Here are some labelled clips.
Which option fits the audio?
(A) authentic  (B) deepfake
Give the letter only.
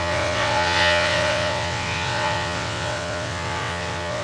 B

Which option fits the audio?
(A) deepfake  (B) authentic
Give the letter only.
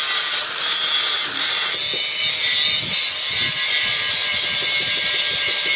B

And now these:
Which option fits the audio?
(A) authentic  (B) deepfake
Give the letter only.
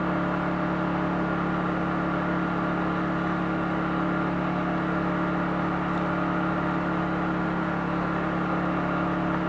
A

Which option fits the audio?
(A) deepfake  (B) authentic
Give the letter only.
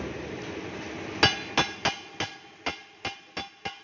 B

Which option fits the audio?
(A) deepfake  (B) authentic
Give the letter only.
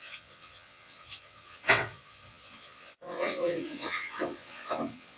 A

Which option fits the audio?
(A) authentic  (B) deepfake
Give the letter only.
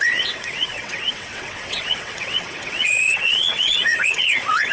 B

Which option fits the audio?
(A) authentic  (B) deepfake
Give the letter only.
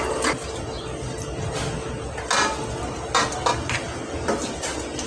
A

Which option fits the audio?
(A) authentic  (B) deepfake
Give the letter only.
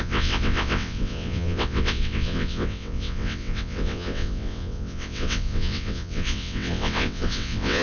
B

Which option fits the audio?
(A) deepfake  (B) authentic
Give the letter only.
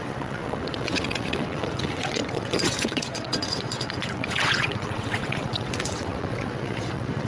A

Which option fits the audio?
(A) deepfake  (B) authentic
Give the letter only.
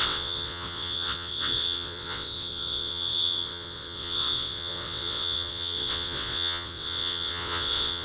A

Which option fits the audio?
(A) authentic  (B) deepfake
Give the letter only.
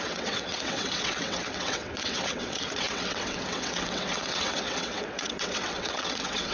B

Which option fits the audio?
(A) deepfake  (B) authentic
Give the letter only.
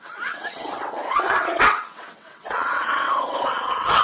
A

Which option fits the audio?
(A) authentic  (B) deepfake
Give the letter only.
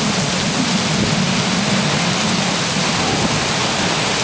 A